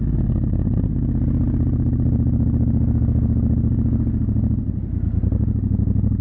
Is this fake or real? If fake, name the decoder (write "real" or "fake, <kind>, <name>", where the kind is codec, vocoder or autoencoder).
real